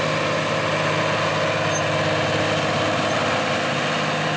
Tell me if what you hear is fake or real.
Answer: real